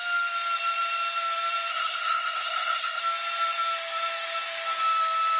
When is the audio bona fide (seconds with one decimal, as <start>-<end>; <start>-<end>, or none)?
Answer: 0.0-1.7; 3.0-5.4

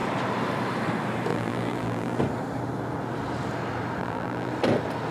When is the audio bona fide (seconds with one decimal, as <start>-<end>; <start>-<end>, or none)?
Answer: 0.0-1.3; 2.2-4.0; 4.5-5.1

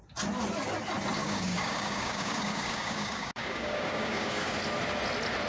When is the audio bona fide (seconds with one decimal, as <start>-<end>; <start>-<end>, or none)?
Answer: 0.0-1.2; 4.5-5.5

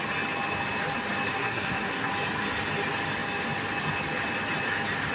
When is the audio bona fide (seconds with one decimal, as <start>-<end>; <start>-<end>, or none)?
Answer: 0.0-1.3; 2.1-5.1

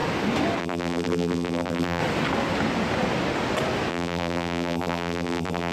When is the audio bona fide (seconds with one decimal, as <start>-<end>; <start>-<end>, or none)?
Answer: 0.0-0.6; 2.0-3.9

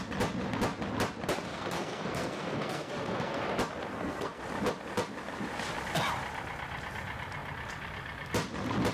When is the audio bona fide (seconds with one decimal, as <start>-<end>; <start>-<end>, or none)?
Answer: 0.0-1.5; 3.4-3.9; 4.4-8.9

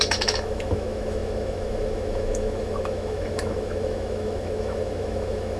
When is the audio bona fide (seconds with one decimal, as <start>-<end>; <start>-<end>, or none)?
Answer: none

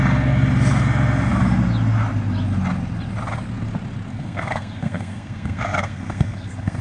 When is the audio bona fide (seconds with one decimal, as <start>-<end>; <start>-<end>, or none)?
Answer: 0.0-4.1